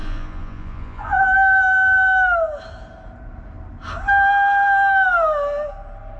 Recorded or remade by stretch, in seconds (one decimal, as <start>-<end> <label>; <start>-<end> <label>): 0.0-1.2 remade; 1.2-6.2 recorded